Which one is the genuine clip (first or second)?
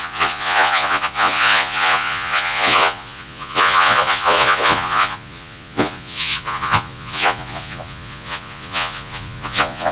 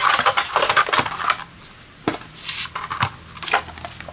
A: second